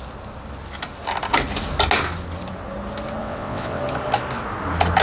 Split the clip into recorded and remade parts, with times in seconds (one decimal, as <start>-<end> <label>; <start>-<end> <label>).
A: 0.0-3.2 recorded; 3.2-3.8 remade; 3.8-5.0 recorded